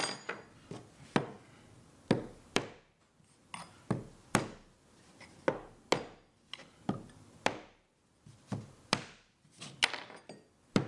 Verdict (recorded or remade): recorded